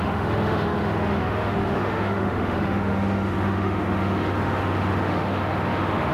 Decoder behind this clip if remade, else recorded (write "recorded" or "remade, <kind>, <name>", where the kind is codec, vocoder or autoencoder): remade, autoencoder, DAC-VAE